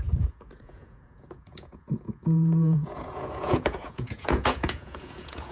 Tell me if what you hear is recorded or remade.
remade